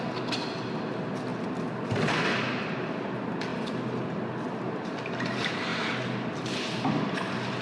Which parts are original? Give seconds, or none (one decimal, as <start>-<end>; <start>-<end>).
0.0-7.6